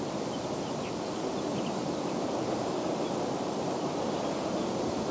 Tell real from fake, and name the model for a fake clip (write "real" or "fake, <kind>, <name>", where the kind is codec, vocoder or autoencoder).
real